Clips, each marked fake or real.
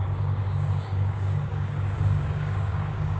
fake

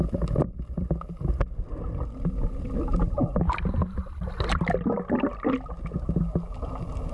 real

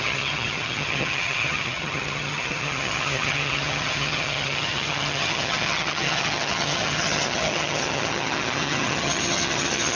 fake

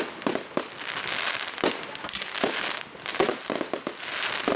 real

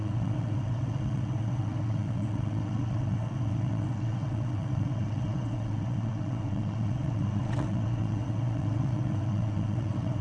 fake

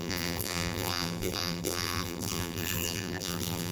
fake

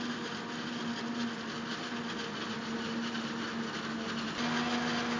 real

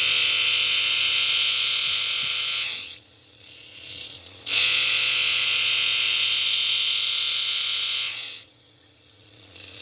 fake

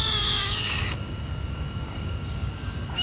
fake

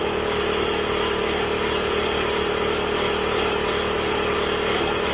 real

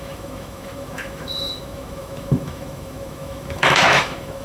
fake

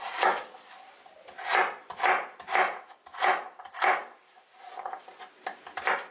real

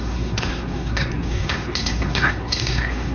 fake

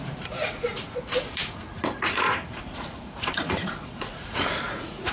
fake